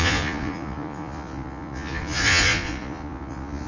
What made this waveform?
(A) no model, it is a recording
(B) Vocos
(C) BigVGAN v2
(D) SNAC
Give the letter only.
B